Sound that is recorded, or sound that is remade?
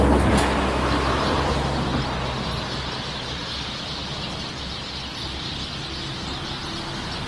recorded